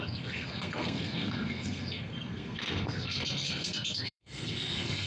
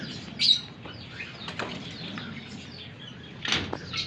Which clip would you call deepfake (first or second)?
first